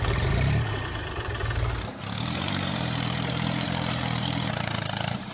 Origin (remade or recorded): remade